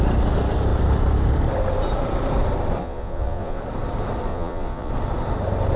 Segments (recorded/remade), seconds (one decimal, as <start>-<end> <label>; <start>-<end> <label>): 0.0-2.8 recorded; 2.8-3.6 remade; 3.6-4.3 recorded; 4.3-4.9 remade; 4.9-5.8 recorded